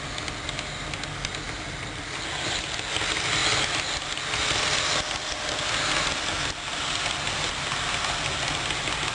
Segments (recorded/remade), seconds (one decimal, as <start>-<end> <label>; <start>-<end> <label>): 0.0-9.1 recorded